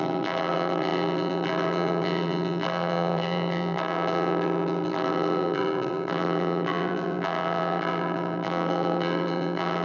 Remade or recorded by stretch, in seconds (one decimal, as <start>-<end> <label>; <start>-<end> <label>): 0.0-9.8 remade